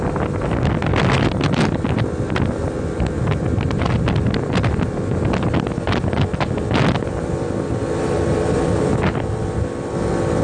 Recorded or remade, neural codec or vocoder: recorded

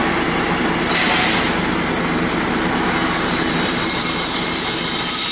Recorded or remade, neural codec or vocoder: recorded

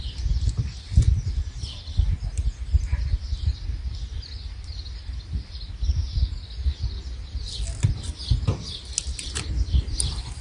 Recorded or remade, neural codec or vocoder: recorded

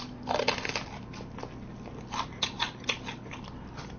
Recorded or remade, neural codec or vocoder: recorded